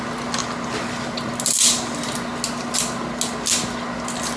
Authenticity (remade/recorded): recorded